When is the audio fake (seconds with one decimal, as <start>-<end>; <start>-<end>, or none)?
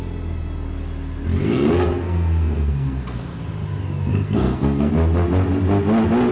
1.3-3.4; 4.1-4.9